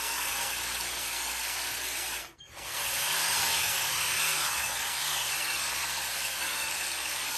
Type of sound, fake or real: fake